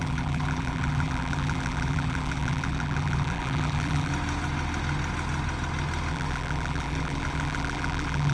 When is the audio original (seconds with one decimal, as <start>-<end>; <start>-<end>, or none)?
4.1-6.1